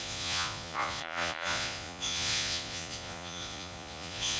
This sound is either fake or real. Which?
fake